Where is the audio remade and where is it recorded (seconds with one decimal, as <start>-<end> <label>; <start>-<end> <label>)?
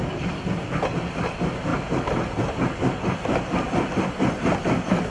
0.0-5.1 recorded